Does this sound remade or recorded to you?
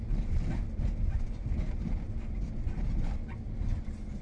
recorded